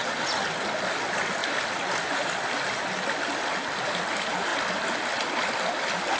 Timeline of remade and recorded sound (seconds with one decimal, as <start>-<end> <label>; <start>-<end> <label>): 0.0-6.2 recorded

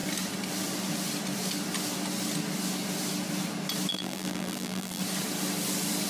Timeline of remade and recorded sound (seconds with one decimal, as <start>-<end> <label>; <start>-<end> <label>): 0.0-3.9 recorded; 3.9-5.0 remade; 5.0-6.1 recorded

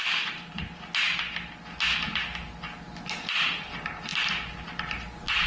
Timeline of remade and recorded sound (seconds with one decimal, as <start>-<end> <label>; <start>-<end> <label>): 0.0-5.5 recorded

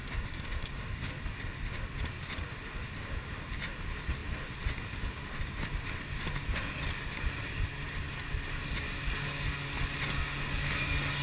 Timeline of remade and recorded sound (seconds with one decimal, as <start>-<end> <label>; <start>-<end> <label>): 0.0-1.1 remade; 1.1-11.2 recorded

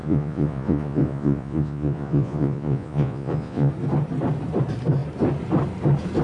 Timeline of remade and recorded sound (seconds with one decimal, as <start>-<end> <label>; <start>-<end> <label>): 0.0-3.7 remade; 3.7-6.2 recorded

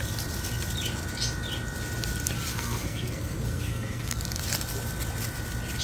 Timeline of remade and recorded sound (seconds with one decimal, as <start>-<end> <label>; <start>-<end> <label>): 0.0-2.5 recorded; 2.5-4.2 remade; 4.2-5.8 recorded

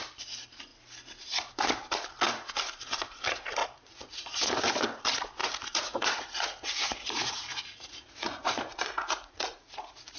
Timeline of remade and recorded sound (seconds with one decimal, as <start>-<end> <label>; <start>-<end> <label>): 0.0-3.6 recorded; 3.6-4.7 remade; 4.7-5.4 recorded; 5.4-10.2 remade